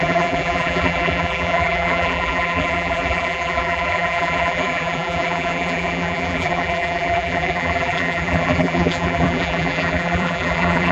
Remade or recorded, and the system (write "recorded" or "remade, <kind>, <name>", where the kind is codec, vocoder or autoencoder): remade, vocoder, BigVGAN v2